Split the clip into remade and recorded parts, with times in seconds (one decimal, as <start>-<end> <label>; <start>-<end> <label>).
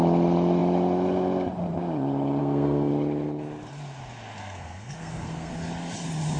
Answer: 0.0-2.4 recorded; 2.4-2.9 remade; 2.9-4.4 recorded; 4.4-5.5 remade; 5.5-6.4 recorded